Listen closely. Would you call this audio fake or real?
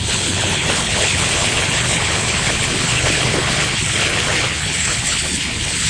fake